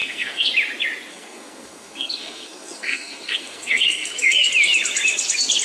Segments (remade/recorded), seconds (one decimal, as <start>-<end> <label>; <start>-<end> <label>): 0.0-0.5 remade; 0.5-1.1 recorded; 1.1-4.5 remade; 4.5-5.6 recorded